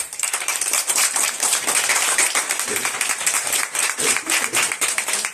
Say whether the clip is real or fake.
fake